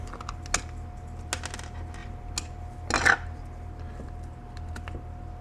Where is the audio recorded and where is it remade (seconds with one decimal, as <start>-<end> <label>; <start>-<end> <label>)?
0.0-5.4 recorded

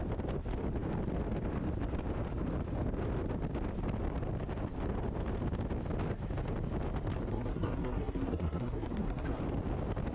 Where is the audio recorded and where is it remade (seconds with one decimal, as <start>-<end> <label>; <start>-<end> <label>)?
0.0-7.3 recorded; 7.3-9.4 remade; 9.4-10.1 recorded

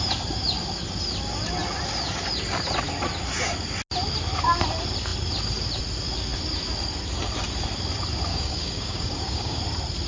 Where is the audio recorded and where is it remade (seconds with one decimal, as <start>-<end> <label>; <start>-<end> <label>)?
0.0-8.3 recorded; 8.3-9.6 remade; 9.6-10.1 recorded